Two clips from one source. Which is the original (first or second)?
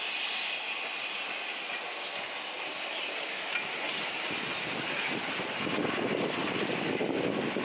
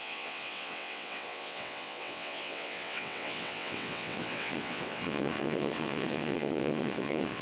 first